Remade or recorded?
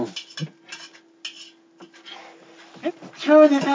recorded